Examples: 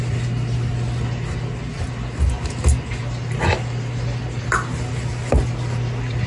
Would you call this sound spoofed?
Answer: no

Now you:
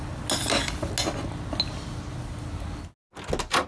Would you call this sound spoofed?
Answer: no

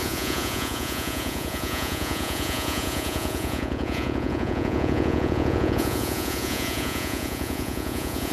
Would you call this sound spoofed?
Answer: yes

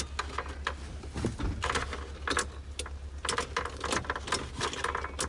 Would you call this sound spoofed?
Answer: no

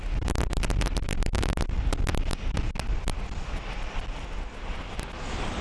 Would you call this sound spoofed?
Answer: no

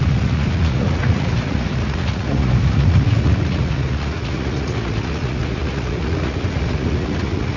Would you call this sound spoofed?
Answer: yes